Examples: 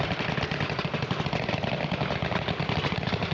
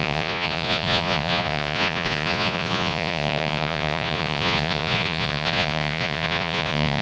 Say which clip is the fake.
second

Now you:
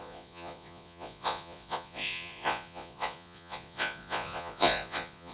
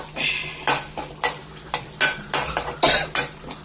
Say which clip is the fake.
first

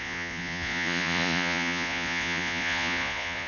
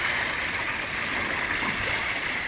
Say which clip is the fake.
first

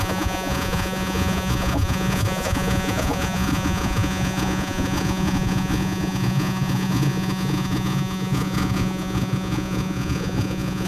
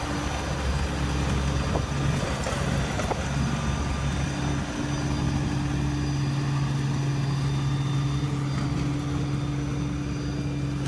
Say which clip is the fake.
first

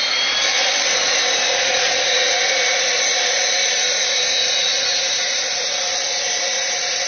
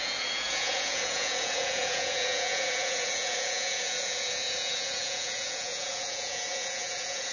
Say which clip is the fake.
second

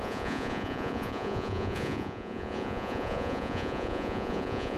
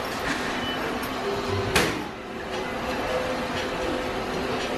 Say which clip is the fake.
first